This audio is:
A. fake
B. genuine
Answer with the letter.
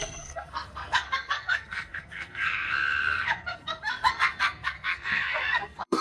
A